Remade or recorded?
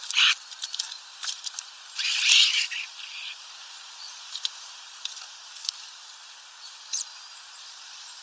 remade